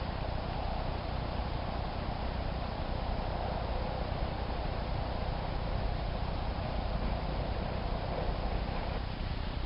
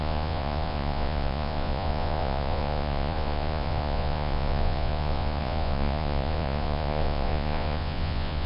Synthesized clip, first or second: second